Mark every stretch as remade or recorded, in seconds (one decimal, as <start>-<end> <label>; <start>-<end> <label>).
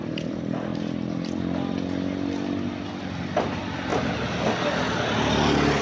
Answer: 0.0-5.8 recorded